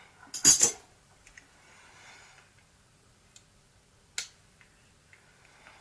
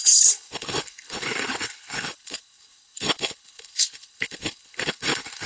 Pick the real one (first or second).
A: first